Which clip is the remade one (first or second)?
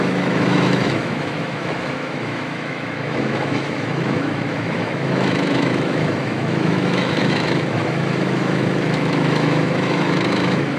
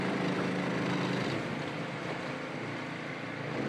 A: first